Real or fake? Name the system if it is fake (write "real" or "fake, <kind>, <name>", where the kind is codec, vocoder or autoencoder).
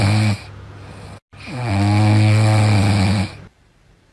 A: real